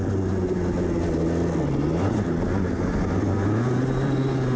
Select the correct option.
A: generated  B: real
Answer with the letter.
B